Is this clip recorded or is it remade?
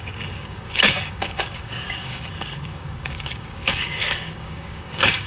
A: remade